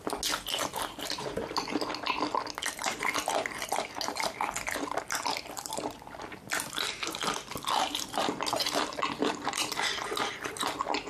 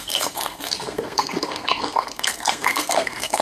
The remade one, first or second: second